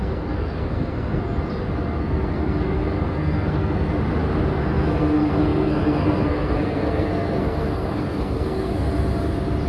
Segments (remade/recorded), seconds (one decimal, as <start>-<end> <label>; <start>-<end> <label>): 0.0-1.2 remade; 1.2-2.0 recorded; 2.0-3.9 remade; 3.9-4.6 recorded; 4.6-8.9 remade; 8.9-9.7 recorded